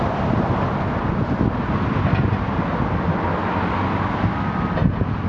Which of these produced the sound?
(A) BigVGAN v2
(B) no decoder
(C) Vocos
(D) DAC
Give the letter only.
B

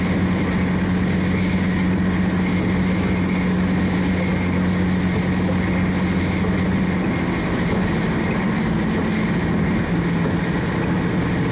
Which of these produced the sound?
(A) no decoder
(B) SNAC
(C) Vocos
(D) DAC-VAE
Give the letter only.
A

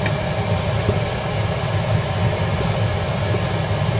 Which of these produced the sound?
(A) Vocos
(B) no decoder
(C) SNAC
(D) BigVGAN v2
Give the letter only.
B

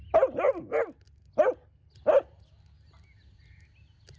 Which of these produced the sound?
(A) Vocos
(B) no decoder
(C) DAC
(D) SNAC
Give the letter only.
B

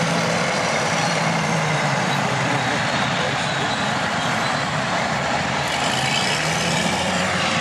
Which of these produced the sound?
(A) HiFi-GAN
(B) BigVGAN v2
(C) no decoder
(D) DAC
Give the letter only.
B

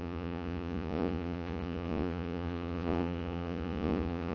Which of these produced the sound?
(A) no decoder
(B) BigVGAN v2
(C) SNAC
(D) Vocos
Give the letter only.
D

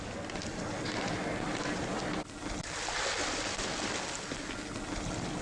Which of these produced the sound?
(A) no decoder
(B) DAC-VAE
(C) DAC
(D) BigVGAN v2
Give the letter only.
A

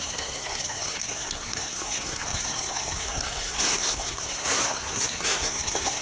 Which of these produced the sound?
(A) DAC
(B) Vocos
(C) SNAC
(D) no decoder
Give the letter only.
C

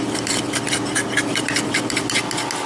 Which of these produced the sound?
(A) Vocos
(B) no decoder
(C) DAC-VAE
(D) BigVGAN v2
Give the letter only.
B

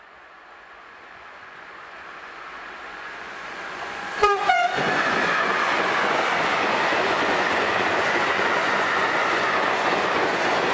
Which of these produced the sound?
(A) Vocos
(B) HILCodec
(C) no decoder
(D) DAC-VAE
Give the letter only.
A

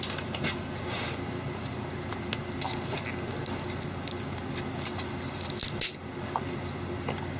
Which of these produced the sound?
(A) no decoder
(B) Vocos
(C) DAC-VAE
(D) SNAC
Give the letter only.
A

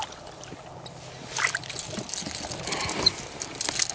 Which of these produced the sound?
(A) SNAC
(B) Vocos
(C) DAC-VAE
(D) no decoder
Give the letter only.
D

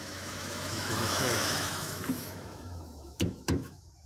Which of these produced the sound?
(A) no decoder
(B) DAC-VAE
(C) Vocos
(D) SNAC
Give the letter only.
B